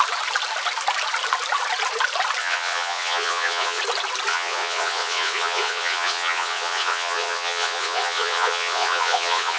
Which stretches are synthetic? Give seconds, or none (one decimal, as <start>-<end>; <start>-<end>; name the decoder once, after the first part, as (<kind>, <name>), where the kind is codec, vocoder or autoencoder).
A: 2.4-3.8 (vocoder, WaveNeXt); 4.3-9.6